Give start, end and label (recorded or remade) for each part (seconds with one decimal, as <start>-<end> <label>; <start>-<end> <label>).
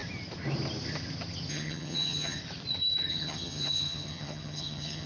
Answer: 0.0-1.5 recorded; 1.5-2.4 remade; 2.4-3.1 recorded; 3.1-5.1 remade